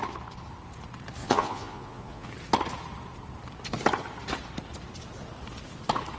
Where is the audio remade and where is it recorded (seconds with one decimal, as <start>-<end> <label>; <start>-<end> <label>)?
0.0-1.2 recorded; 1.2-2.3 remade; 2.3-6.2 recorded